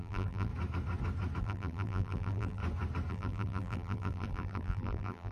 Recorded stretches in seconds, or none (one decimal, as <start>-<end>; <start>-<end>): 0.5-1.4; 2.6-3.1